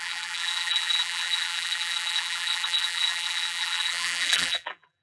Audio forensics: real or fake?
fake